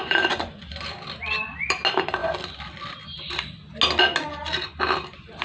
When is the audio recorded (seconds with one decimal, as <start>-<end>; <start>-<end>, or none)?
0.7-5.4